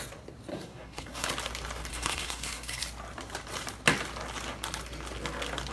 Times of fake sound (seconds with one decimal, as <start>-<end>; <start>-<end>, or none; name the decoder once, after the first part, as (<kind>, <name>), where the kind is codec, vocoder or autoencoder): 0.5-1.3 (codec, SNAC); 1.9-2.8